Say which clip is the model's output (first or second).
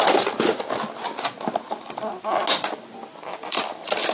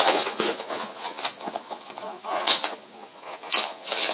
second